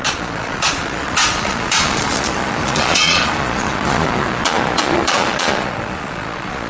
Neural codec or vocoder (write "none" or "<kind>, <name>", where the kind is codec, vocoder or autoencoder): vocoder, Vocos